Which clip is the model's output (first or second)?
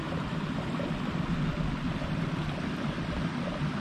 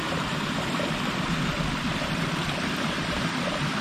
second